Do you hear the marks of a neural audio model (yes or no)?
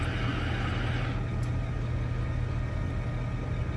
no